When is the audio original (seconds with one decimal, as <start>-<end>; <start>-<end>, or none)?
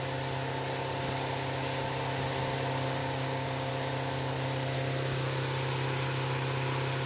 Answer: 0.0-3.0; 3.7-7.1